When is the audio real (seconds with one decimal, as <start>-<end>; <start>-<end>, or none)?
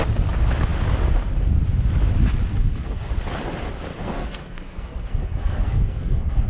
0.0-2.5; 3.1-3.9